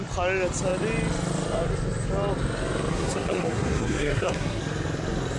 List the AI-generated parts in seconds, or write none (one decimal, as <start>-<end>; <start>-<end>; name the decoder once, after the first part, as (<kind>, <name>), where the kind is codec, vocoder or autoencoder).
2.9-4.6 (codec, SNAC)